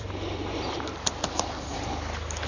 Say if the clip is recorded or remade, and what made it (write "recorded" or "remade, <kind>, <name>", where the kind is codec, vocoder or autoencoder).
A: remade, vocoder, BigVGAN v2